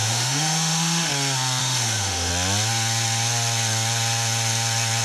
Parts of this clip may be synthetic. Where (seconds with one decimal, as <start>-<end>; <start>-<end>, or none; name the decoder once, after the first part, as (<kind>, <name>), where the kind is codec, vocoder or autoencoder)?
0.0-1.1 (autoencoder, DAC-VAE); 1.6-2.3